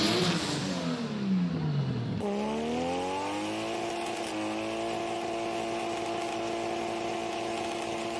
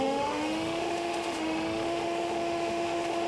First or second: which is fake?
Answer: second